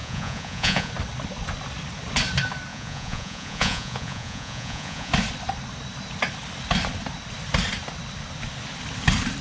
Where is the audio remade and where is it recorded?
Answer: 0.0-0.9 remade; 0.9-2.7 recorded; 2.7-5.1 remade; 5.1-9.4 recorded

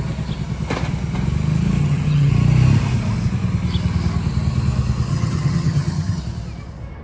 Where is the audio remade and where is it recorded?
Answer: 0.0-1.8 recorded; 1.8-2.3 remade; 2.3-5.1 recorded; 5.1-6.2 remade; 6.2-7.0 recorded

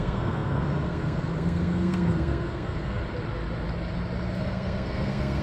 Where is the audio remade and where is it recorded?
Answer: 0.0-3.0 remade; 3.0-4.4 recorded; 4.4-5.4 remade

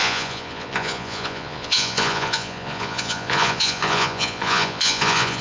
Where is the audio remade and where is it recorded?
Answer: 0.0-5.4 remade

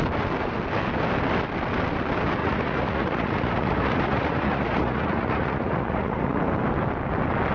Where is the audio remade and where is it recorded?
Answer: 0.0-2.4 recorded; 2.4-6.4 remade; 6.4-7.5 recorded

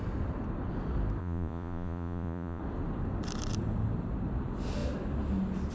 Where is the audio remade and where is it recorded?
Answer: 0.0-1.2 recorded; 1.2-2.6 remade; 2.6-5.7 recorded

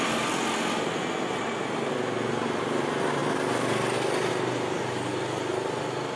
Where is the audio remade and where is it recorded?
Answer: 0.0-6.2 recorded

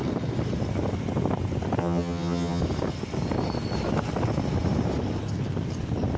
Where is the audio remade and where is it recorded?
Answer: 0.0-1.8 recorded; 1.8-2.6 remade; 2.6-6.2 recorded